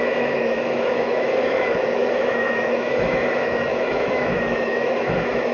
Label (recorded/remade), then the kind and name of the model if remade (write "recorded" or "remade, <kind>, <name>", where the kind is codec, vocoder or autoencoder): remade, autoencoder, DAC-VAE